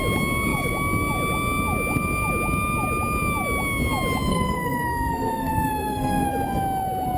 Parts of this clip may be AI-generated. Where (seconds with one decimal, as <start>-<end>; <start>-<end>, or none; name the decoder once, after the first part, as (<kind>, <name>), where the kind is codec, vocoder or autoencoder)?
4.3-6.3 (codec, SNAC)